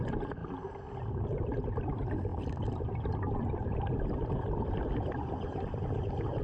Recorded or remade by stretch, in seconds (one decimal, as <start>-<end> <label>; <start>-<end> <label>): 0.0-2.3 recorded; 2.3-6.4 remade